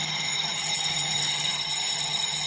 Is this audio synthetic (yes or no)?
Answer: yes